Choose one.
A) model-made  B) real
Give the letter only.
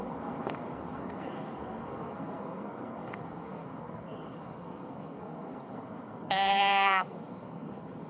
A